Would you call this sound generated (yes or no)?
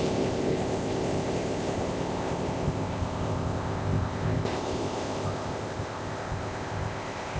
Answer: yes